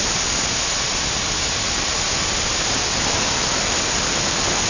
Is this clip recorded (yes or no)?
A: yes